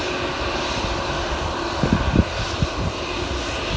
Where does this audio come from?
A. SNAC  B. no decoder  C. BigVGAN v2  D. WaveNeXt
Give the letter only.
B